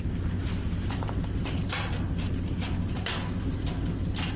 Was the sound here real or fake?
real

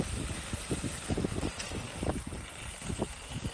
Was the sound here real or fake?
real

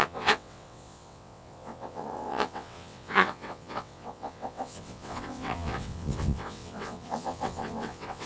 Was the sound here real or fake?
fake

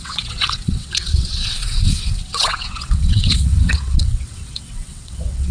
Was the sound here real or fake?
fake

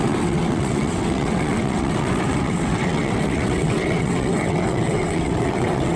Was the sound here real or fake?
fake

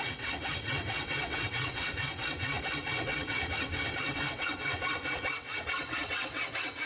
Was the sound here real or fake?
fake